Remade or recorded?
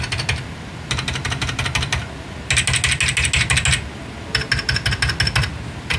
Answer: recorded